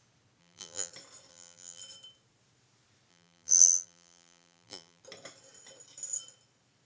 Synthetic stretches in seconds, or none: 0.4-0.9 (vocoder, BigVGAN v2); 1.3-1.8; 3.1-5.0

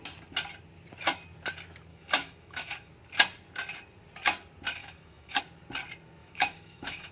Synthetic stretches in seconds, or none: 1.9-2.9 (autoencoder, DAC-VAE); 4.8-5.4; 6.2-7.1